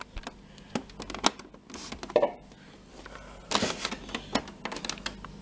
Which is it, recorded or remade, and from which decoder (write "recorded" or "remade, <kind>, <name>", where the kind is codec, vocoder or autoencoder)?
recorded